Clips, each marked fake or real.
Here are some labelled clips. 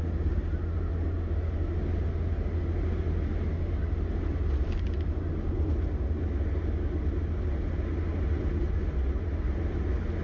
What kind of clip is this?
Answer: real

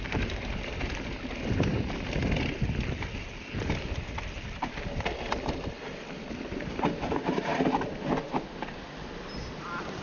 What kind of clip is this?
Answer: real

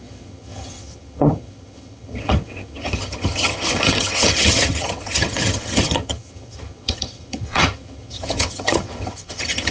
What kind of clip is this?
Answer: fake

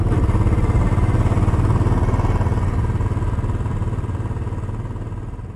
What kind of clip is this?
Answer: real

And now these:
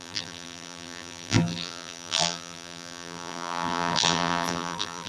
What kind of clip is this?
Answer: fake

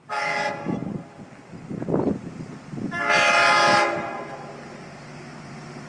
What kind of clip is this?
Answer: real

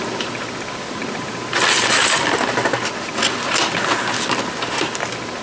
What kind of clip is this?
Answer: real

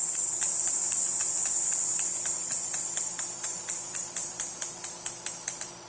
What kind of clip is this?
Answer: real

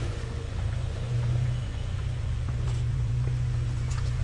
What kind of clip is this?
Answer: fake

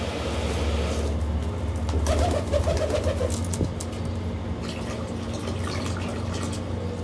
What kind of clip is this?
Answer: real